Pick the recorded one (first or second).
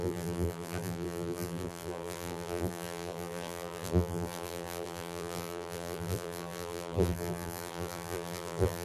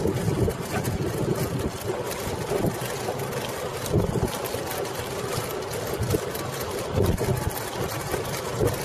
second